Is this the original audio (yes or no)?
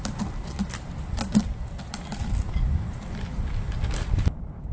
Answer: yes